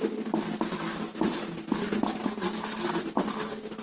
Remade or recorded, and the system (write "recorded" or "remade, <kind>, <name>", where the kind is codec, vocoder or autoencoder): recorded